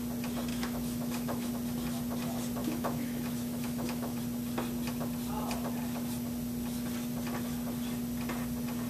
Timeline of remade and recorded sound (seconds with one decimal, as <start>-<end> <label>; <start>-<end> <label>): 0.0-0.5 recorded; 0.5-1.5 remade; 1.5-2.6 recorded; 2.6-4.2 remade; 4.2-8.9 recorded